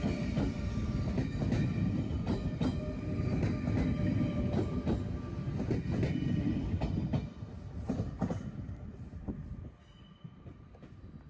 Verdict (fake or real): real